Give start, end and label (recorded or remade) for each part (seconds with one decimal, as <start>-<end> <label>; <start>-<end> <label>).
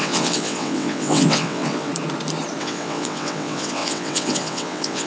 0.0-1.9 remade; 1.9-2.6 recorded; 2.6-5.1 remade